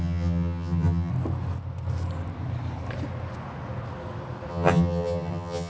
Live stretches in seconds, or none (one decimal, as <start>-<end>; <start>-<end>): 1.1-4.5